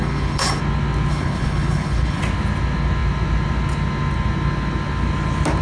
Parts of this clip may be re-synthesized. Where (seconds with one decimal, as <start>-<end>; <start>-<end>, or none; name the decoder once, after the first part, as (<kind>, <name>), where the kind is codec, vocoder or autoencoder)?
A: 0.0-0.6 (codec, HILCodec); 1.1-2.2